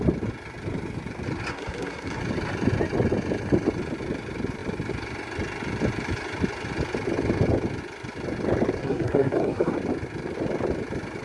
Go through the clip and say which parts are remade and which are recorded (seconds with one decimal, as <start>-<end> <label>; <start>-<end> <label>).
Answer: 0.0-1.5 recorded; 1.5-2.2 remade; 2.2-8.8 recorded; 8.8-9.7 remade; 9.7-11.2 recorded